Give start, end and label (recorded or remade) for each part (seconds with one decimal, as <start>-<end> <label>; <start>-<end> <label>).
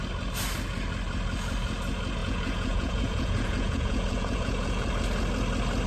0.0-2.2 recorded; 2.2-4.9 remade; 4.9-5.9 recorded